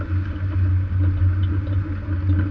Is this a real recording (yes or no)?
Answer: yes